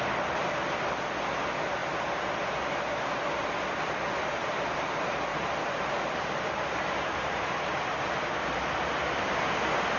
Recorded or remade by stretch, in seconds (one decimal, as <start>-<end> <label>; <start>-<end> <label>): 0.0-5.3 recorded; 5.3-9.4 remade; 9.4-10.0 recorded